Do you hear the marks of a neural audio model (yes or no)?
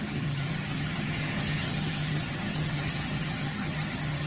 yes